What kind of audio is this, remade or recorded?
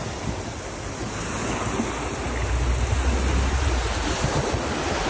recorded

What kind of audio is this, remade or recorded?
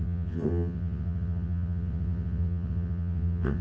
remade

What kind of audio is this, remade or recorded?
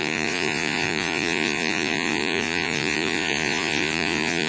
remade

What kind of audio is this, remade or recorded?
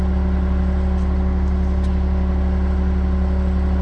recorded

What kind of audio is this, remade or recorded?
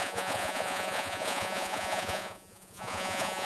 remade